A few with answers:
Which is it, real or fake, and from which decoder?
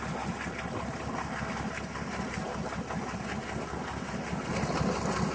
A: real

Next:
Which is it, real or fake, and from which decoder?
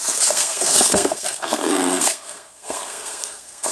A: fake, codec, SNAC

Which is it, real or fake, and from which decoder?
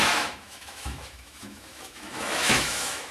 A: fake, autoencoder, DAC-VAE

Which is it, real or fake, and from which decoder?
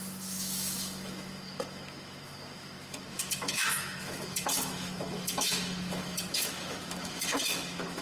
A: fake, autoencoder, DAC-VAE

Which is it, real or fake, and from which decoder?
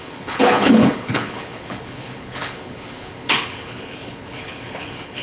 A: fake, codec, HILCodec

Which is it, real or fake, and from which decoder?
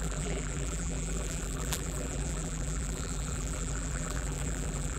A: fake, vocoder, BigVGAN v2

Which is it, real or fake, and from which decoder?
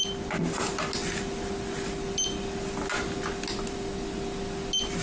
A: real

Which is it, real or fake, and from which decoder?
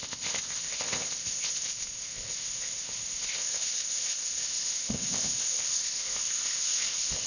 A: fake, codec, ZipCodec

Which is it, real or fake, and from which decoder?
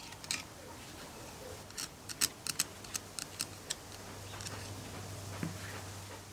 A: real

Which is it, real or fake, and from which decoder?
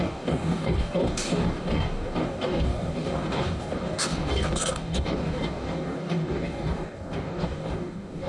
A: fake, codec, DAC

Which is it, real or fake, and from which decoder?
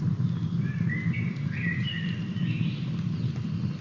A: real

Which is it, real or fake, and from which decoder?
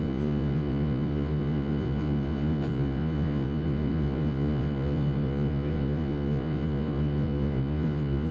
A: fake, vocoder, Vocos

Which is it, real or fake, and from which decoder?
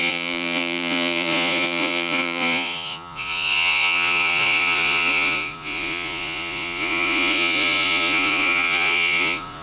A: fake, vocoder, Vocos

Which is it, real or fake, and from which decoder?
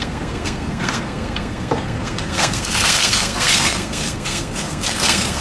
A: fake, codec, SNAC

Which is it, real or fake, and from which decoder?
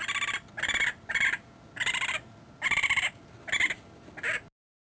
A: real